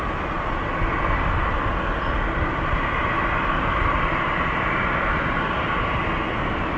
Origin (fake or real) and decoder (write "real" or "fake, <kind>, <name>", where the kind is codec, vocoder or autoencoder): real